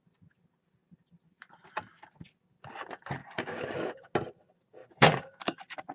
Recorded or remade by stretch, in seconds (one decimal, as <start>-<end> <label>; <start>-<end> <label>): 0.0-3.2 recorded; 3.2-4.1 remade; 4.1-4.8 recorded; 4.8-5.4 remade; 5.4-5.9 recorded